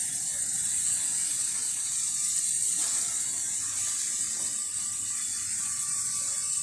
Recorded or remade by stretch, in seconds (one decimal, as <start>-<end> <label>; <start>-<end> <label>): 0.0-1.1 remade; 1.1-5.1 recorded; 5.1-6.6 remade